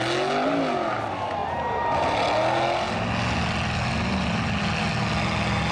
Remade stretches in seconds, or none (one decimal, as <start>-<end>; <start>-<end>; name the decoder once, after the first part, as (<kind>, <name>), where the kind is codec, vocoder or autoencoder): none

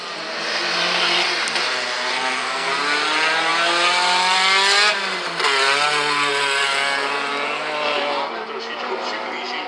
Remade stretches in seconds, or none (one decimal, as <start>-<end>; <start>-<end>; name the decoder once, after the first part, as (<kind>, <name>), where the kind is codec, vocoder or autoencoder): 2.1-2.7 (codec, SNAC)

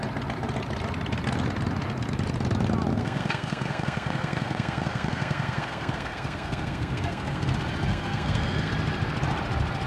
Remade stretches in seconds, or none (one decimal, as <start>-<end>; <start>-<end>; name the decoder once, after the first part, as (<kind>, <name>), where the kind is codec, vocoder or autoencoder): 2.9-7.5 (codec, SNAC); 7.9-8.7